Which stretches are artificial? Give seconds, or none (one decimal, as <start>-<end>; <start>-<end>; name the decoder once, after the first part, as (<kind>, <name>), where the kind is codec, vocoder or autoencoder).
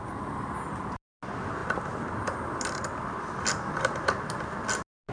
none